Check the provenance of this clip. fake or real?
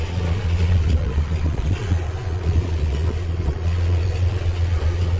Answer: fake